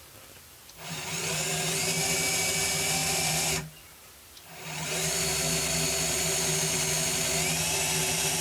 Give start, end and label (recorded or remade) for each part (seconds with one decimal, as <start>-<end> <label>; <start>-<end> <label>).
0.0-8.4 recorded